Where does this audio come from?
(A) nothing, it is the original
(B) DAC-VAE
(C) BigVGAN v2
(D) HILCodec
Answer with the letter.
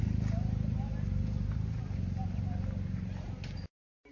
A